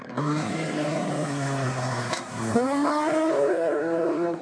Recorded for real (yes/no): no